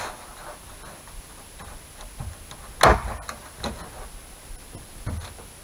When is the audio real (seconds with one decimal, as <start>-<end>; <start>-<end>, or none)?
0.0-5.6